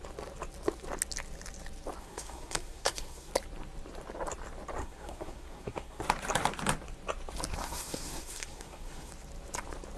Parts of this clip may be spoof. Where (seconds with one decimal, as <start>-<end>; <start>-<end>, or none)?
2.0-3.3; 4.8-6.0; 7.6-9.1